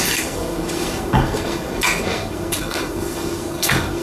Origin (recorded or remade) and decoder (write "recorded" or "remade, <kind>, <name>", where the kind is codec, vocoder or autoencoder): remade, codec, SNAC